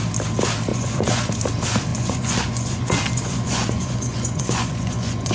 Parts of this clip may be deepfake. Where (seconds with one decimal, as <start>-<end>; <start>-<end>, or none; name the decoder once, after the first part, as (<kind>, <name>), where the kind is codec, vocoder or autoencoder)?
0.7-1.3 (vocoder, Vocos); 1.9-5.3